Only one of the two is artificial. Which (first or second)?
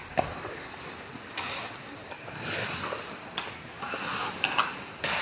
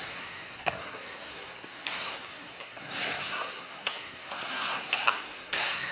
second